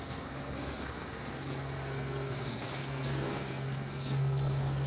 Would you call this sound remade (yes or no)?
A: yes